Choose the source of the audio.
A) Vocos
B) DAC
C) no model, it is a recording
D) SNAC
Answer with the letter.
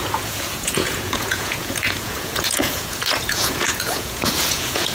A